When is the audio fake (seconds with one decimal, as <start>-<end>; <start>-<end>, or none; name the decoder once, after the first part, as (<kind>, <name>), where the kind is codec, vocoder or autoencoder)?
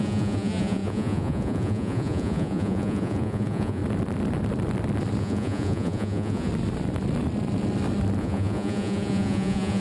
0.0-3.8 (vocoder, Vocos); 5.2-6.5; 8.2-9.8